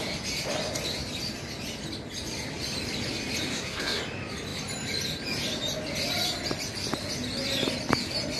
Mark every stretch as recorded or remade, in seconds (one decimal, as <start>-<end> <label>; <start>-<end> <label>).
0.0-3.5 recorded; 3.5-4.0 remade; 4.0-8.4 recorded